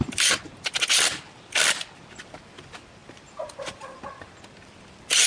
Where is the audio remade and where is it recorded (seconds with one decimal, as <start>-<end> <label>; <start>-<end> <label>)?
0.0-3.0 recorded; 3.0-4.0 remade; 4.0-5.3 recorded